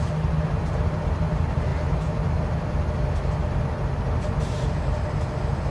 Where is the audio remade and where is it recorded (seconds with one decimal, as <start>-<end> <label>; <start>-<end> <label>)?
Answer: 0.0-5.7 recorded